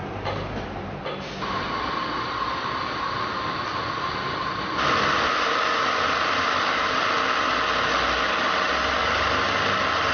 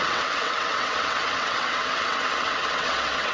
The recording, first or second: first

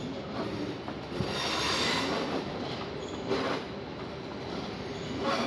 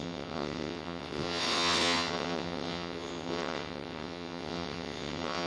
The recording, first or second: first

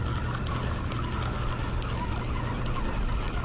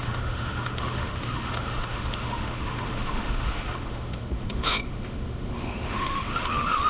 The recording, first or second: first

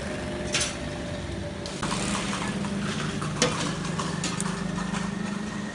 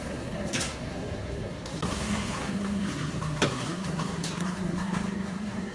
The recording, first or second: first